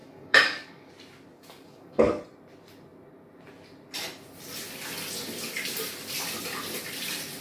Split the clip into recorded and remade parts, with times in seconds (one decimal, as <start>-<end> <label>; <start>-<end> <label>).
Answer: 0.0-0.9 remade; 0.9-1.3 recorded; 1.3-2.2 remade; 2.2-7.4 recorded